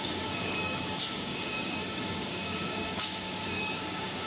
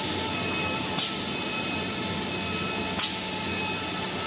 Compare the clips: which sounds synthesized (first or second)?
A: first